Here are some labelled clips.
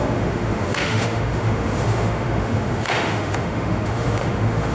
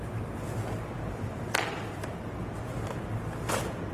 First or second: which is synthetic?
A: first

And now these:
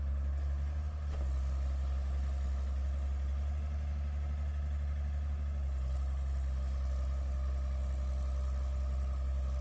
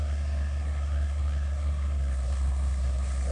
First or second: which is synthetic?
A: second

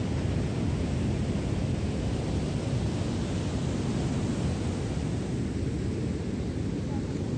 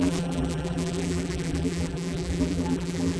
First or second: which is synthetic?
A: second